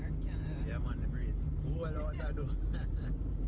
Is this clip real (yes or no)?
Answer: yes